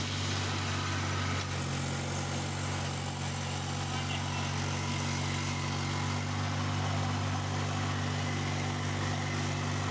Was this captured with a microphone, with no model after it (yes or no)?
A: yes